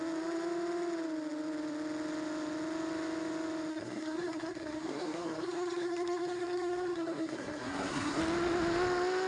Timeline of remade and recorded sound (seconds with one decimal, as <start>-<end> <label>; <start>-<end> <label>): 0.0-3.7 recorded; 3.7-8.2 remade; 8.2-9.3 recorded